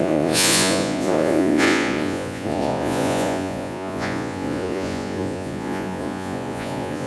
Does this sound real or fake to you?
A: fake